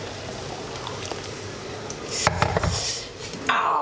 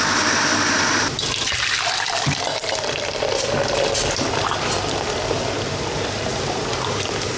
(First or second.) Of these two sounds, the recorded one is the second